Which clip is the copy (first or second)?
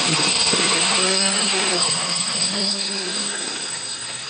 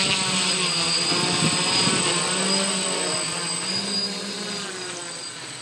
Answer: first